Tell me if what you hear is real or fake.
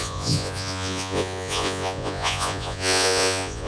fake